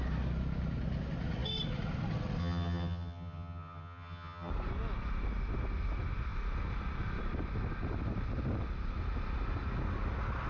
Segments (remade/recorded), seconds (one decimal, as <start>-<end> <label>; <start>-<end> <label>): 0.0-2.4 recorded; 2.4-4.5 remade; 4.5-10.5 recorded